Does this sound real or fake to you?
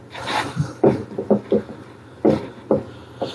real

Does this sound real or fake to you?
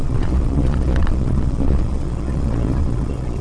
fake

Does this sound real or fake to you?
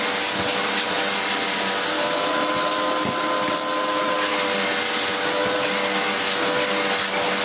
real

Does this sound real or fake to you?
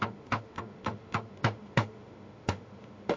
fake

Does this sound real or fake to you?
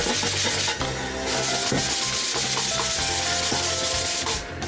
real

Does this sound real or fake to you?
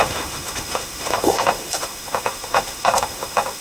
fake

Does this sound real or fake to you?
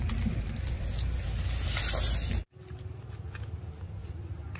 real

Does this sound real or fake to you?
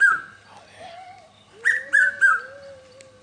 real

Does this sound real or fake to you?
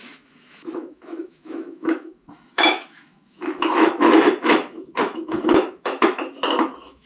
fake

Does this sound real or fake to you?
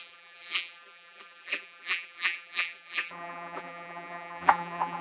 fake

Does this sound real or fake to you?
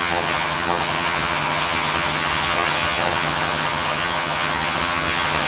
fake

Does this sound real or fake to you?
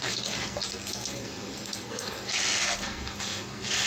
fake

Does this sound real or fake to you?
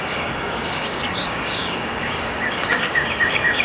fake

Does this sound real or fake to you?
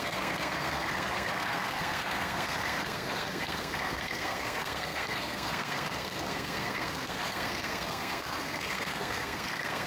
fake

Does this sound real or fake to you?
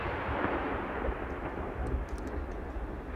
real